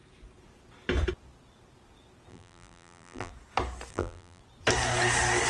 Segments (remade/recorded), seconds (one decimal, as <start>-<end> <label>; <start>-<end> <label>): 0.0-2.3 recorded; 2.3-3.3 remade; 3.3-3.9 recorded; 3.9-4.4 remade; 4.4-5.5 recorded